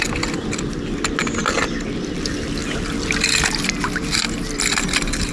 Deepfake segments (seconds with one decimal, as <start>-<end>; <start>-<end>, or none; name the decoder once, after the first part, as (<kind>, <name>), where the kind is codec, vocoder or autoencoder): 1.4-2.2 (vocoder, BigVGAN v2)